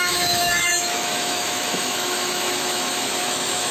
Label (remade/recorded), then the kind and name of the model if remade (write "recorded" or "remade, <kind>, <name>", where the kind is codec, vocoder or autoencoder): remade, autoencoder, DAC-VAE